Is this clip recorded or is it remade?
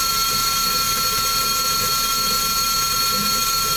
remade